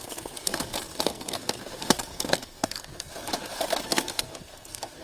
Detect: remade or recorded remade